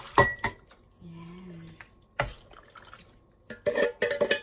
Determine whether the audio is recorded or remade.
recorded